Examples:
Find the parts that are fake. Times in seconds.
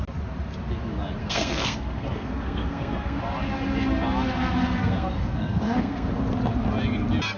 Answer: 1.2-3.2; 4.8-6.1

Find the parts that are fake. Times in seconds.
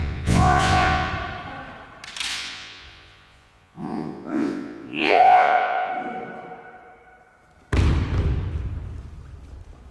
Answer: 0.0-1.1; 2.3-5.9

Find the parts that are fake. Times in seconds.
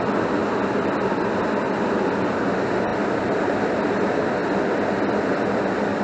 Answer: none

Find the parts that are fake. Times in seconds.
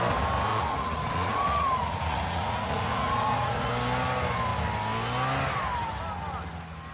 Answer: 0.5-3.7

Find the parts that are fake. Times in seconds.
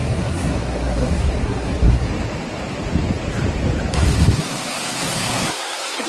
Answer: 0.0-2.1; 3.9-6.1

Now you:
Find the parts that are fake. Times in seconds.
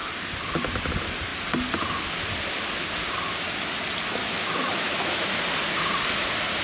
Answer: 4.2-5.4